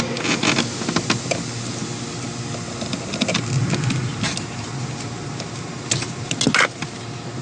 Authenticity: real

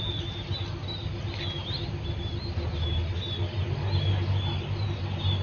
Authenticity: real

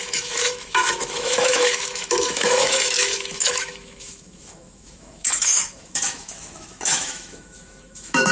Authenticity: fake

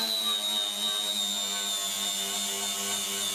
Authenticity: real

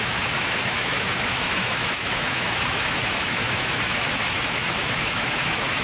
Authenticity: fake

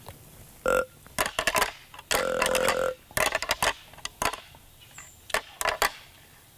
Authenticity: real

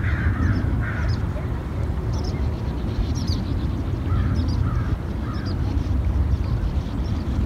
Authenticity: real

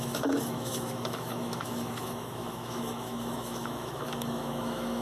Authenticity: fake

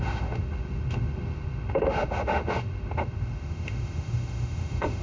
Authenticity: fake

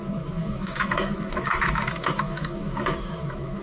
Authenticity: fake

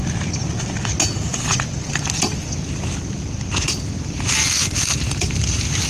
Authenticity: real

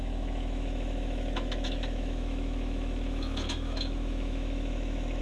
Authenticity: fake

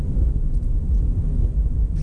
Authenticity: real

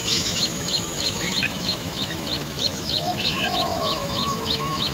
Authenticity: fake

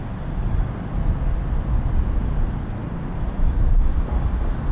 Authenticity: real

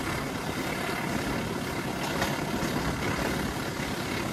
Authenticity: real